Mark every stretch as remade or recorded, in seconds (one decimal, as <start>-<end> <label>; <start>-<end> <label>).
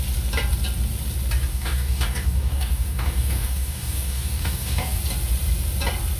0.0-1.5 recorded; 1.5-5.0 remade; 5.0-6.2 recorded